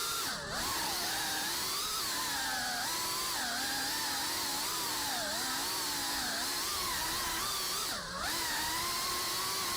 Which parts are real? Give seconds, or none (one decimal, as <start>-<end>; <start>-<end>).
2.0-4.5; 5.2-6.0; 9.1-9.8